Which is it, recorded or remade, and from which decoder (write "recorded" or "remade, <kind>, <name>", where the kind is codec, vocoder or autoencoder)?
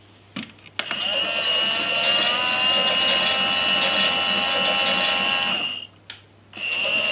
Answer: recorded